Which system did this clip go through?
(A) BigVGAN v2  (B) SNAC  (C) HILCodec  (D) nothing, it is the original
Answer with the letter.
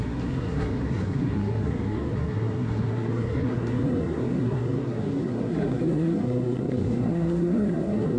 B